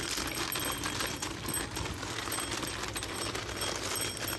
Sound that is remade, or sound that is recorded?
recorded